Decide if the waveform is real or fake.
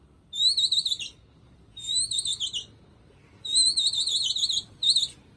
real